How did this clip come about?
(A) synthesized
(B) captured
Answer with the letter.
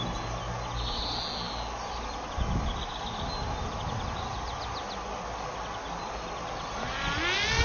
B